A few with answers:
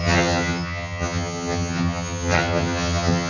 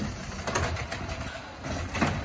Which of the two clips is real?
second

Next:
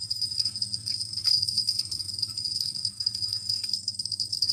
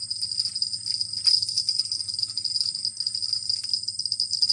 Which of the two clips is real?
second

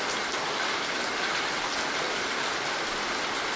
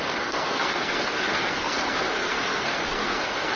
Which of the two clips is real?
first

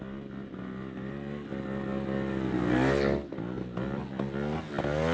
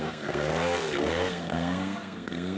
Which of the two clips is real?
first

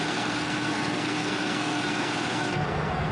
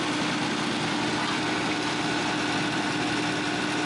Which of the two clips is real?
second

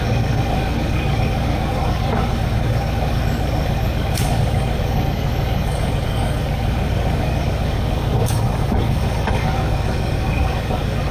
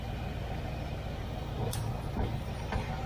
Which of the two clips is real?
second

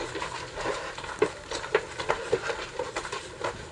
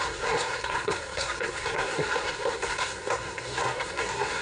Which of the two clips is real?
first